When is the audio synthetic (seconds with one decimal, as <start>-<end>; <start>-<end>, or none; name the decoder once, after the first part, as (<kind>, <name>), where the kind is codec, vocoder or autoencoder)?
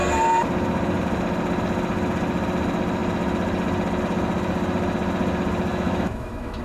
5.7-6.6 (autoencoder, DAC-VAE)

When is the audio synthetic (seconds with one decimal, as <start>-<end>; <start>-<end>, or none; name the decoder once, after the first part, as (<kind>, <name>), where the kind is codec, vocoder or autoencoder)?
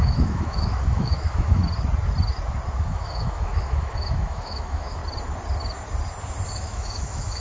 0.0-1.6 (autoencoder, DAC-VAE); 2.8-5.0; 6.5-7.4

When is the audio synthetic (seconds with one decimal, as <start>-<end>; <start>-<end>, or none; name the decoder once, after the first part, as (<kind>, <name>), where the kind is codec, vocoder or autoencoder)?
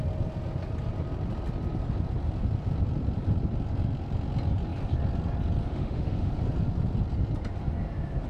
5.7-6.3 (autoencoder, DAC-VAE)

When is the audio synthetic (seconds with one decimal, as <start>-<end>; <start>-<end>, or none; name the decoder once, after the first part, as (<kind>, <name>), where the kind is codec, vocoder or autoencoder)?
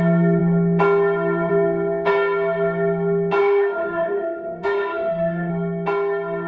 3.4-5.5 (autoencoder, DAC-VAE)